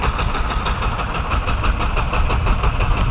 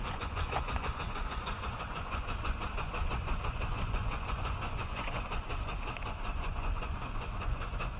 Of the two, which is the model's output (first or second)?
second